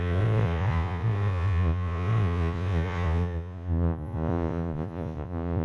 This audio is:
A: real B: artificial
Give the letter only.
B